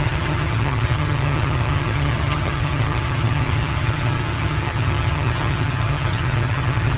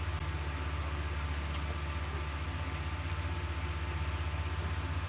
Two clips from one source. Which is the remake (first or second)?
first